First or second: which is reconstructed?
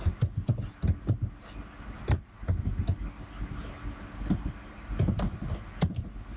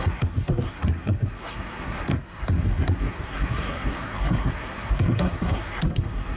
second